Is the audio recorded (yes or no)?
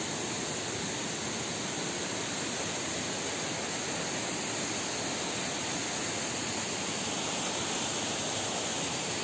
yes